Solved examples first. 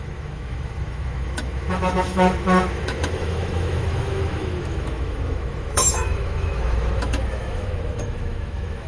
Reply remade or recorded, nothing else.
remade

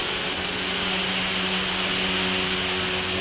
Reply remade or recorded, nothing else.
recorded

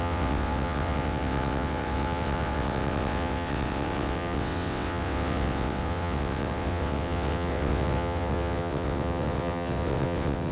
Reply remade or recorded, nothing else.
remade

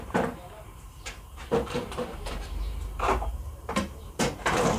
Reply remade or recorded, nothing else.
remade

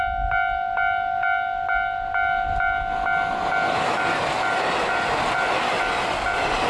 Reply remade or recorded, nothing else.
recorded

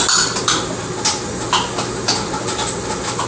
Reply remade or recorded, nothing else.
recorded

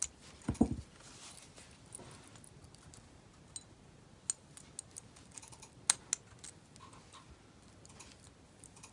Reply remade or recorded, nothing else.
recorded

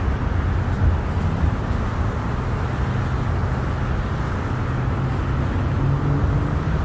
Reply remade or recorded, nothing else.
recorded